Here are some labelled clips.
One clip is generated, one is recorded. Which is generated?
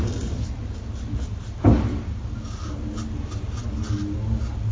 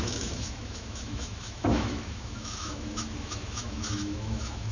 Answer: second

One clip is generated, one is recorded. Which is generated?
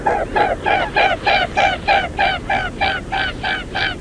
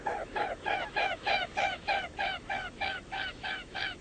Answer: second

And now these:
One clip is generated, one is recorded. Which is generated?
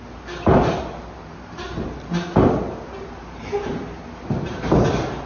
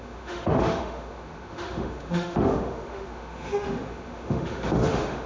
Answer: second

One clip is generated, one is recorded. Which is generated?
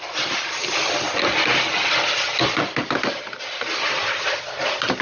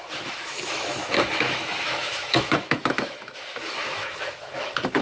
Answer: second